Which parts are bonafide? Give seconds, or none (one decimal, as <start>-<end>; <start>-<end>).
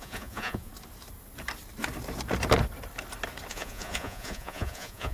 0.7-3.5